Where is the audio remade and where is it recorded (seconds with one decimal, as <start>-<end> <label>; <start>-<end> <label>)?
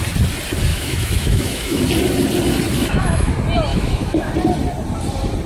0.0-0.7 recorded; 0.7-1.8 remade; 1.8-2.8 recorded; 2.8-3.3 remade; 3.3-3.7 recorded; 3.7-4.3 remade; 4.3-5.5 recorded